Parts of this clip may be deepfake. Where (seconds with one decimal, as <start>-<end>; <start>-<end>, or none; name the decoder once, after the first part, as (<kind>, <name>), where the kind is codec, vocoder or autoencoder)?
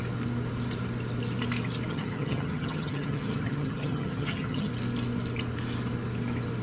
1.9-4.7 (vocoder, HiFi-GAN)